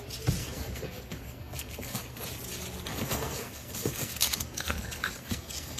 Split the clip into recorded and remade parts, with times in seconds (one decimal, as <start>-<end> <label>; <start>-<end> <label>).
0.0-0.4 recorded; 0.4-2.2 remade; 2.2-2.9 recorded; 2.9-5.8 remade

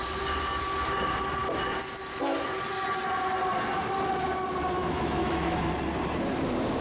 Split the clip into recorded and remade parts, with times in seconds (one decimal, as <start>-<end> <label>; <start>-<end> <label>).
0.0-4.8 recorded; 4.8-5.7 remade; 5.7-6.8 recorded

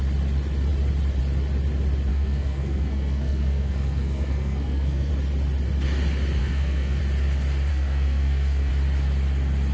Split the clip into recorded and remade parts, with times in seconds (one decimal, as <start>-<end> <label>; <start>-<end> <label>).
0.0-2.1 recorded; 2.1-5.1 remade; 5.1-6.4 recorded; 6.4-7.0 remade; 7.0-7.7 recorded; 7.7-8.7 remade; 8.7-9.7 recorded